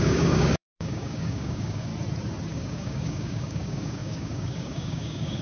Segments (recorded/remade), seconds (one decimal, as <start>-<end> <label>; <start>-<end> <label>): 0.0-1.9 remade; 1.9-2.5 recorded; 2.5-5.4 remade